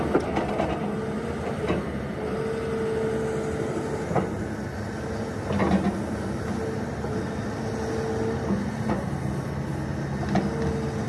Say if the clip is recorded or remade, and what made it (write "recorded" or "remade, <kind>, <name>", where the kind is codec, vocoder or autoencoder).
recorded